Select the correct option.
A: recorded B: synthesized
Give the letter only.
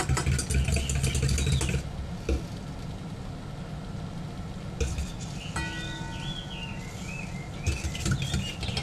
A